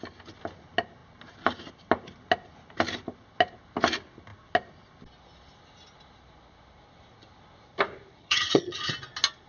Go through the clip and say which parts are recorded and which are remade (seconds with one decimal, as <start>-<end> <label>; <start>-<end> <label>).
0.0-8.2 recorded; 8.2-8.9 remade; 8.9-9.5 recorded